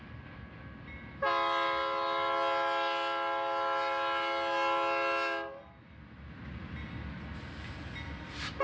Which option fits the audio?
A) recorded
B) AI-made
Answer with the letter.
A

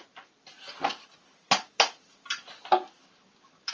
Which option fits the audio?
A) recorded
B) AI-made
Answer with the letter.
A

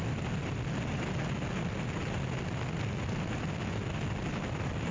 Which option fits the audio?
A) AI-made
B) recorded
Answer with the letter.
B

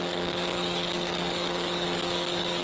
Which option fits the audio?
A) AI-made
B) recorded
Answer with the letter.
A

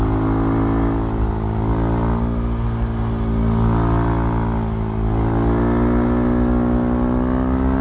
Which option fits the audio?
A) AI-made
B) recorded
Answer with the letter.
B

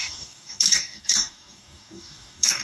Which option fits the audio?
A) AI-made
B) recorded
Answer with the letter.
A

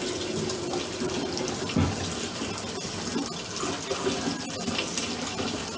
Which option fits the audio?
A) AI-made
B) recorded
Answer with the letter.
B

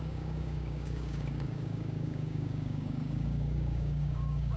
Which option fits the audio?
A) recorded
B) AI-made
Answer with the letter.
B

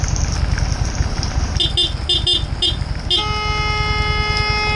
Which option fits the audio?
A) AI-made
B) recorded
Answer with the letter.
B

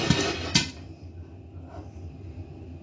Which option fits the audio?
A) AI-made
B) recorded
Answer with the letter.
B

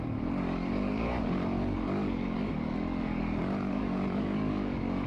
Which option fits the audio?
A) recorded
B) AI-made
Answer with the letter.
B